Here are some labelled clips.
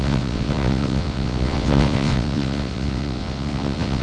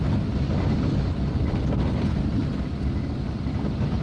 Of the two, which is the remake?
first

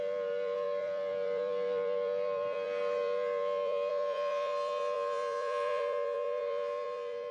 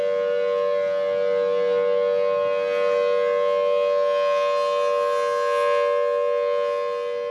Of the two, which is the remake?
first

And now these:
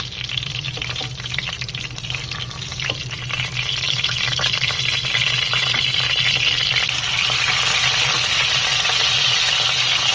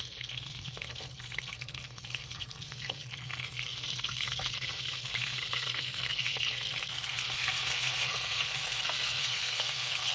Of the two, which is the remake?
second